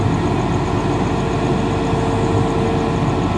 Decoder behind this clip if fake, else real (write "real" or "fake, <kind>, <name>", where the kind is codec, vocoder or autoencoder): real